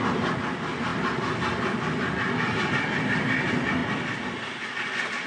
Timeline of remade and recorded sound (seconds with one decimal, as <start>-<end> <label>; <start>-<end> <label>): 0.0-5.3 recorded